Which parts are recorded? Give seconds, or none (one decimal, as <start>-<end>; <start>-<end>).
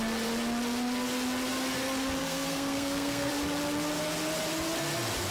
0.0-2.2; 3.3-5.3